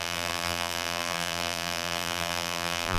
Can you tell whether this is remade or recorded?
remade